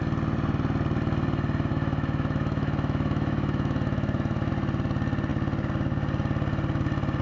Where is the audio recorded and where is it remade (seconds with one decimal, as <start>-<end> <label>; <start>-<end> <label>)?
0.0-1.7 recorded; 1.7-4.5 remade; 4.5-7.2 recorded